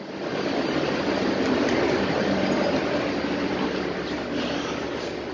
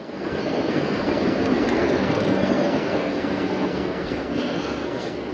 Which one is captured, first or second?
first